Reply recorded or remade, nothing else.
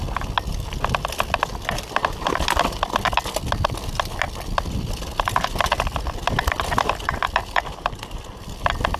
recorded